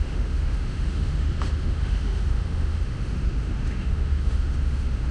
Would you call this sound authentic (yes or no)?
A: no